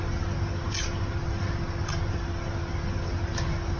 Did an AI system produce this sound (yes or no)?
no